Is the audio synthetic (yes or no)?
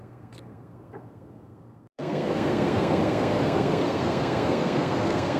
yes